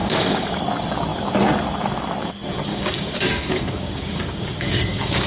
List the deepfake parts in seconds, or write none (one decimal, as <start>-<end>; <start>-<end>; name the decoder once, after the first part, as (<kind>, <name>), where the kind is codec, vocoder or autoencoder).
0.0-0.6 (codec, DAC); 2.7-5.3